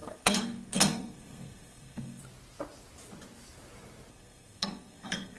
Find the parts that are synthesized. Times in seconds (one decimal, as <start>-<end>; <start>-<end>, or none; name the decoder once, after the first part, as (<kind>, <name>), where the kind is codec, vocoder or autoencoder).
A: 0.0-2.2 (codec, SNAC); 4.1-5.4